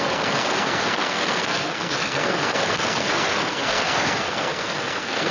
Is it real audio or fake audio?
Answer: fake